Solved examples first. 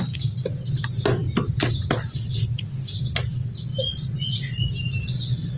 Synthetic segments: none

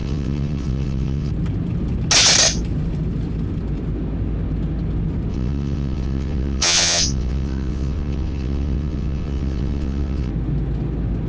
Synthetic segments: 0.0-1.3; 5.3-10.3